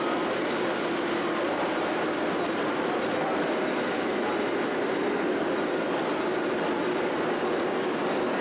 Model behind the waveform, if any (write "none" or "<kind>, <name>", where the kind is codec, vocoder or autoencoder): none